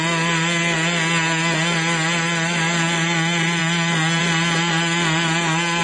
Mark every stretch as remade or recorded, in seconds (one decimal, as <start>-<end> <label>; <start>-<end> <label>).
0.0-5.8 recorded